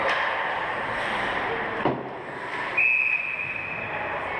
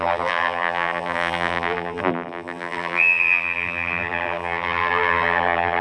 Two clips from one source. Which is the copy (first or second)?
second